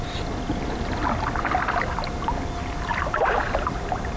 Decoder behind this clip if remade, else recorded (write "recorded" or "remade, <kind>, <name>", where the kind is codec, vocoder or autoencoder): recorded